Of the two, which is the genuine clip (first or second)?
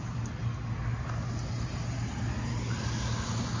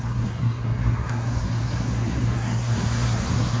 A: first